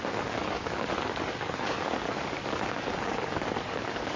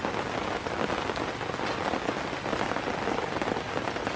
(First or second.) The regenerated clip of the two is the first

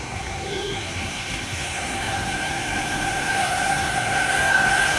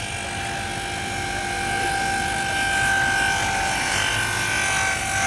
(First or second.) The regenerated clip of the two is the first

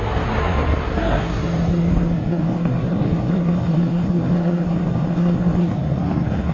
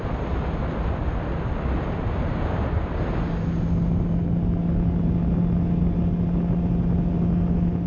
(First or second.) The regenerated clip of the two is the first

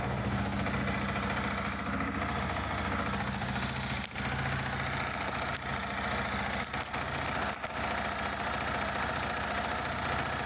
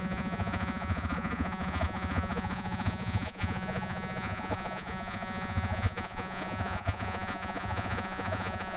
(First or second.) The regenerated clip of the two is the second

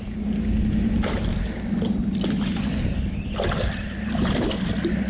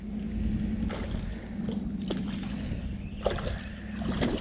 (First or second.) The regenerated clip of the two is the first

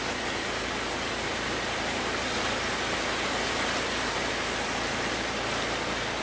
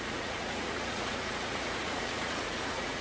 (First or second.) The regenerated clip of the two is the second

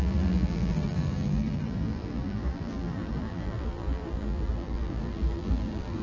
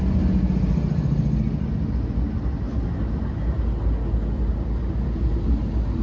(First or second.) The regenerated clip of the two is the first